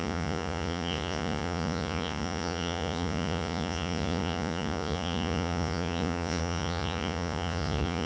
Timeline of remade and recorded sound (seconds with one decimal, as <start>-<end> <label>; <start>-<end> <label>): 0.0-8.1 remade